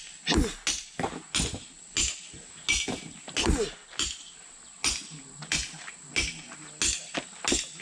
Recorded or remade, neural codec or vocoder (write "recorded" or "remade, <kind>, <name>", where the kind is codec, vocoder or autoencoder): recorded